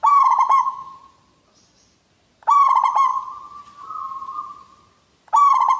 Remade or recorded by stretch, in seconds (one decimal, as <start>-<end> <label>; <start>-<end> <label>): 0.0-0.9 remade; 0.9-5.8 recorded